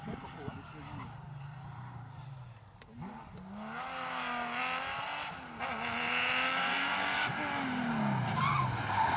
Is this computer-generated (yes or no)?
no